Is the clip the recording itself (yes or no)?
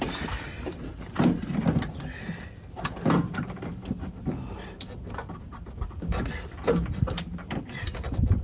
yes